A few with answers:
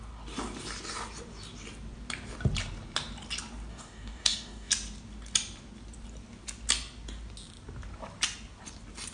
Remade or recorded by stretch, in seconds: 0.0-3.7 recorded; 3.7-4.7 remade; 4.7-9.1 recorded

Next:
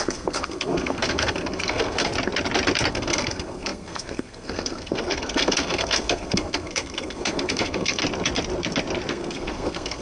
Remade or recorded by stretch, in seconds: 0.0-2.1 remade; 2.1-2.9 recorded; 2.9-8.0 remade; 8.0-9.1 recorded; 9.1-10.0 remade

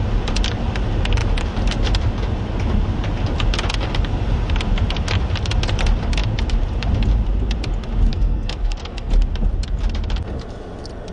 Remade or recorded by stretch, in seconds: 0.0-8.1 recorded; 8.1-9.1 remade; 9.1-11.1 recorded

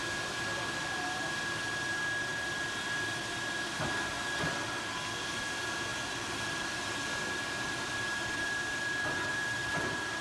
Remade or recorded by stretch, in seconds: 0.0-5.9 recorded; 5.9-10.2 remade